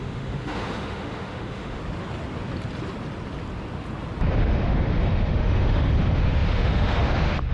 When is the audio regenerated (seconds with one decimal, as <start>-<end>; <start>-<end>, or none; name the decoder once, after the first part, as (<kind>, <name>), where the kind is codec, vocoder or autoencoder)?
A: 0.0-1.8 (autoencoder, DAC-VAE); 4.4-7.5